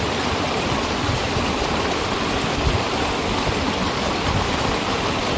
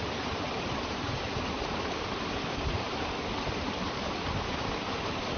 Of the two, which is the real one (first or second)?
first